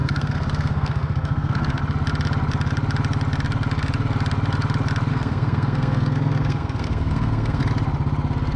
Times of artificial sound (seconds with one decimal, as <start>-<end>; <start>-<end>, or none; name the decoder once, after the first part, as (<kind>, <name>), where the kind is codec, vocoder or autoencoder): 0.0-1.8 (codec, SNAC); 5.1-7.6